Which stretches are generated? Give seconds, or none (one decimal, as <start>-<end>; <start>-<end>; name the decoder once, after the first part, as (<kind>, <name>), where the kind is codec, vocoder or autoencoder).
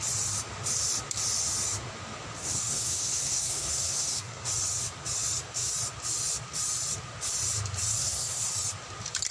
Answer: 2.4-4.5 (codec, SNAC); 7.9-8.5